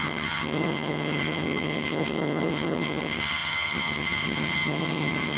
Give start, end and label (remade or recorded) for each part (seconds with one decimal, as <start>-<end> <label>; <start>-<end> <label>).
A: 0.0-5.4 remade